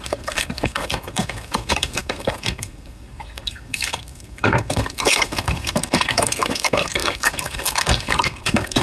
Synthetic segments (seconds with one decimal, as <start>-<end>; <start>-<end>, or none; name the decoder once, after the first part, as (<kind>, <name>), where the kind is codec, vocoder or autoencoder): 0.0-8.8 (codec, SNAC)